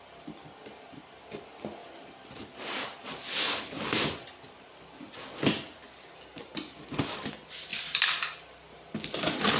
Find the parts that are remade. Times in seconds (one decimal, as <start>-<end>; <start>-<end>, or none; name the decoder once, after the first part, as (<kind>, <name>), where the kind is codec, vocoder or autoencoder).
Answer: 1.8-7.1 (vocoder, BigVGAN v2); 7.7-8.9